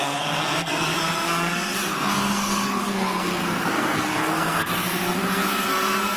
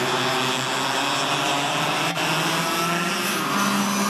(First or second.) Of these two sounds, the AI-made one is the first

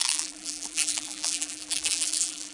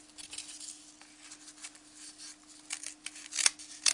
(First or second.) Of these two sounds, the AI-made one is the first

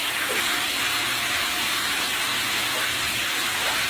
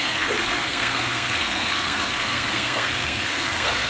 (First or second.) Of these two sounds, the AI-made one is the second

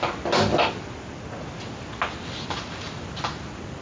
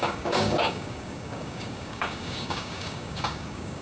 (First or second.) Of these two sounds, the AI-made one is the second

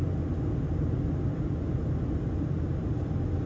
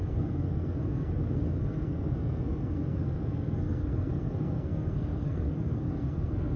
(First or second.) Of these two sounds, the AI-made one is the second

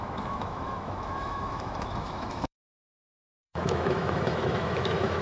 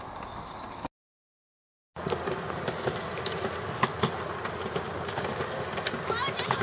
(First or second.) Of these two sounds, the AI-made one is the first